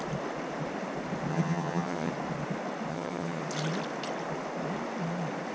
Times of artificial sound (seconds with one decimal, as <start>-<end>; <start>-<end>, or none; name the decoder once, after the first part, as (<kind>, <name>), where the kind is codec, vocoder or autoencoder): 1.3-2.1 (vocoder, HiFi-GAN); 2.9-3.4